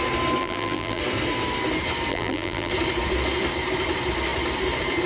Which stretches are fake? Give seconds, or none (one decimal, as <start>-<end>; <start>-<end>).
0.4-1.0; 2.1-2.7